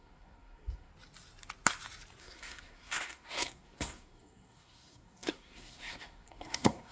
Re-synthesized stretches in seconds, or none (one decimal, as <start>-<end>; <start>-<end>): 0.0-0.9; 2.2-6.9